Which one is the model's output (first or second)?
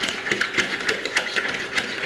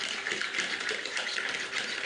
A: first